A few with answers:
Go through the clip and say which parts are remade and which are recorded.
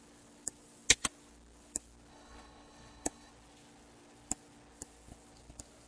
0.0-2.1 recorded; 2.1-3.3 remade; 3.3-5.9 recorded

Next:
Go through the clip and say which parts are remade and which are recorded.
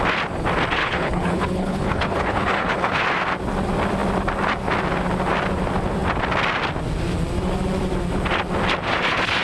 0.0-0.8 recorded; 0.8-3.0 remade; 3.0-9.4 recorded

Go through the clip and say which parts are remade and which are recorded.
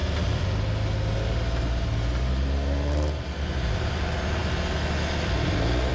0.0-5.9 recorded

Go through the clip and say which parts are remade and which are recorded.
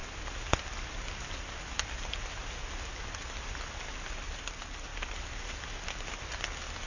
0.0-6.9 recorded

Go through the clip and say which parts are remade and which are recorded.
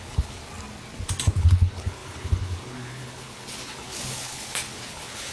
0.0-0.4 remade; 0.4-1.3 recorded; 1.3-5.3 remade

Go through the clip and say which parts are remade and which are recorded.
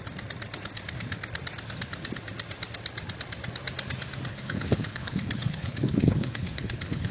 0.0-4.3 recorded; 4.3-7.1 remade